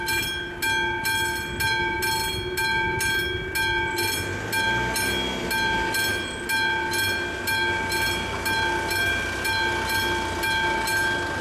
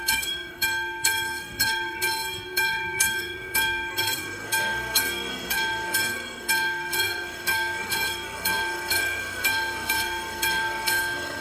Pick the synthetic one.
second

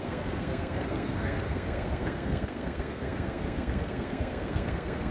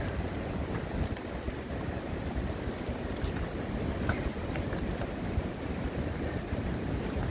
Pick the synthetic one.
first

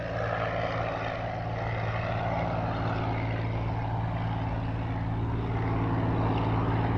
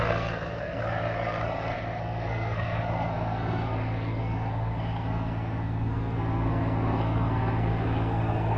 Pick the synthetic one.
second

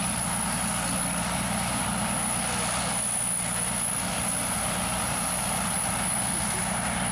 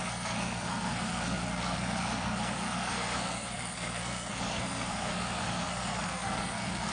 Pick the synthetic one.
second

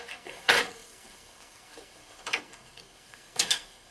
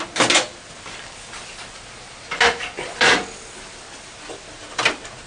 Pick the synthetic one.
first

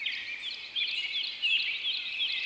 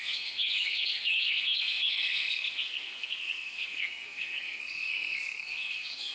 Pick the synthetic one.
second